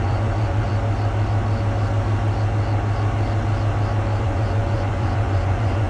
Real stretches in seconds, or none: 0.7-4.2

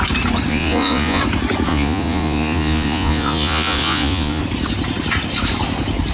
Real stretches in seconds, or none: 0.0-0.5; 1.2-1.7; 4.4-6.1

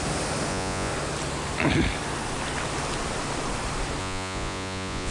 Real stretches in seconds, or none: 0.0-0.5; 0.9-4.0

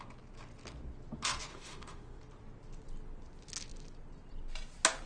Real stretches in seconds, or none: 0.0-1.5; 2.2-5.1

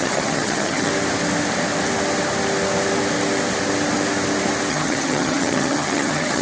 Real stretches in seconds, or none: 0.9-4.7

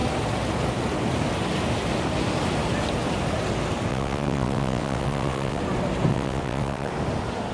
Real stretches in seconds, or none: 0.0-3.9; 5.6-6.1; 6.9-7.5